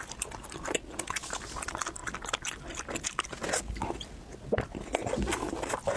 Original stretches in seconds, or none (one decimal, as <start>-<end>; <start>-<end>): 0.0-6.0